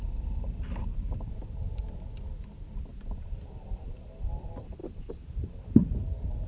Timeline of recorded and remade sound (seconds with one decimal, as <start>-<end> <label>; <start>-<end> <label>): 0.0-0.8 recorded; 0.8-1.4 remade; 1.4-2.9 recorded; 2.9-3.7 remade; 3.7-4.8 recorded; 4.8-6.0 remade; 6.0-6.5 recorded